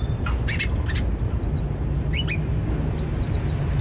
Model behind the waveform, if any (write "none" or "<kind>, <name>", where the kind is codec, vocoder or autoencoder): none